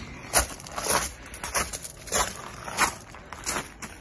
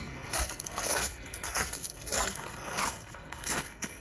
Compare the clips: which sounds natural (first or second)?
first